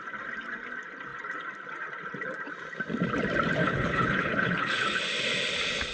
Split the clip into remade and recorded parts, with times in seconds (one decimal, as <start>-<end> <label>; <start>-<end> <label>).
0.0-3.6 recorded; 3.6-5.0 remade; 5.0-5.9 recorded